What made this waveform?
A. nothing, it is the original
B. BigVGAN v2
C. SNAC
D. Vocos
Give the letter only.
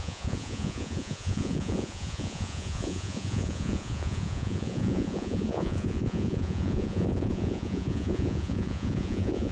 D